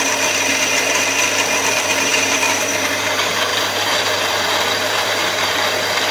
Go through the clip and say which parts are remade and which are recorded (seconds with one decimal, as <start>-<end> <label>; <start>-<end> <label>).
0.0-0.5 recorded; 0.5-1.0 remade; 1.0-1.9 recorded; 1.9-2.9 remade; 2.9-3.5 recorded; 3.5-5.5 remade; 5.5-6.1 recorded